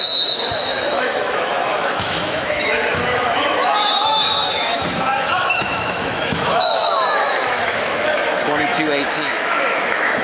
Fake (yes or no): yes